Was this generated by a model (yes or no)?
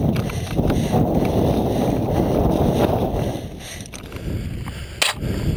no